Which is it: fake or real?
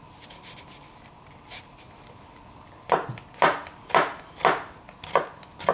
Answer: real